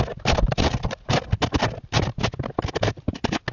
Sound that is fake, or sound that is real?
real